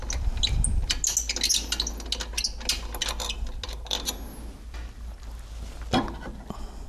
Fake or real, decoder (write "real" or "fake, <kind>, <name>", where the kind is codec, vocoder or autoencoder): real